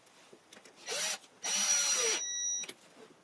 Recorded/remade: recorded